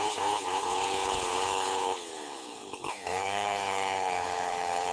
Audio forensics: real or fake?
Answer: fake